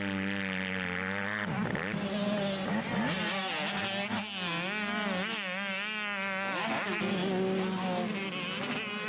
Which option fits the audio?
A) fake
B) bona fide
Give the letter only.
B